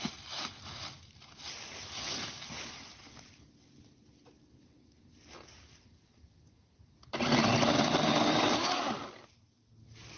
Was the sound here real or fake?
real